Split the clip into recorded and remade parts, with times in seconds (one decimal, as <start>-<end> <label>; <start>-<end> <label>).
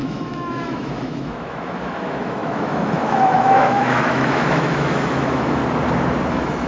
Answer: 0.0-5.6 remade; 5.6-6.3 recorded; 6.3-6.7 remade